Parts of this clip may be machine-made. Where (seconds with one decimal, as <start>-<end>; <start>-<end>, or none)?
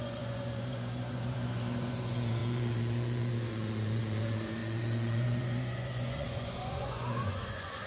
0.0-7.9